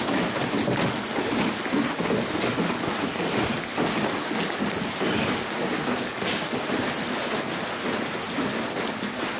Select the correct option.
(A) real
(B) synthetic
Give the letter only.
A